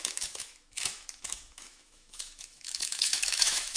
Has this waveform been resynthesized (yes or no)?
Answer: yes